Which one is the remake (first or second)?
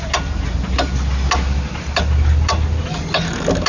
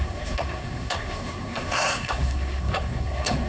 second